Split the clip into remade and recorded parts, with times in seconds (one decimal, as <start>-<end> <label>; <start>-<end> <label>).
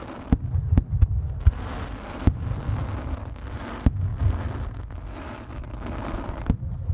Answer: 0.0-6.9 recorded